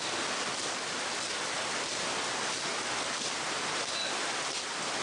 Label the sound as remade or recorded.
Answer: recorded